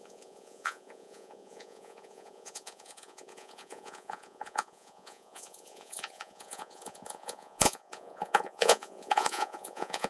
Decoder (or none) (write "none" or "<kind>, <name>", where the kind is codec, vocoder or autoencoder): vocoder, Vocos